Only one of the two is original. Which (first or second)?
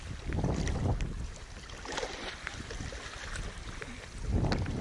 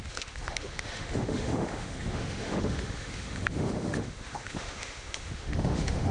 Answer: first